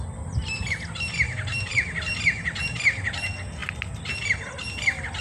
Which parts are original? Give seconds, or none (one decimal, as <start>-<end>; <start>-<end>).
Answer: 0.0-5.2